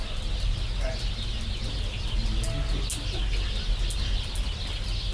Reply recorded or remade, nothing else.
recorded